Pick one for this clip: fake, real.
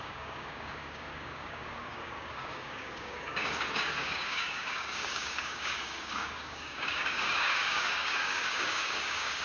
fake